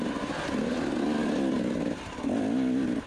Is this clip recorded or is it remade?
recorded